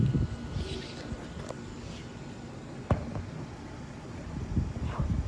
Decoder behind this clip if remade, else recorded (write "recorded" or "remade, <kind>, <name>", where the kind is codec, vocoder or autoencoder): recorded